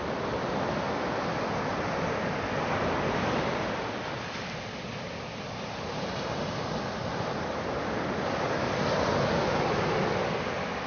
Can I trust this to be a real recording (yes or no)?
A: yes